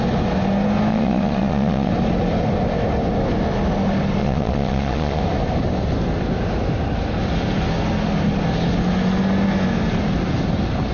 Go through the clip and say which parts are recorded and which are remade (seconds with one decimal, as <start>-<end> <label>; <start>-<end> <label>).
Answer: 0.0-0.9 recorded; 0.9-1.9 remade; 1.9-4.2 recorded; 4.2-5.2 remade; 5.2-10.9 recorded